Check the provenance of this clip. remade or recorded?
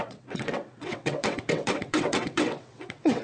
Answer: remade